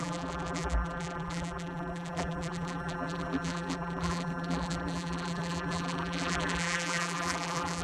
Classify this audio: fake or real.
fake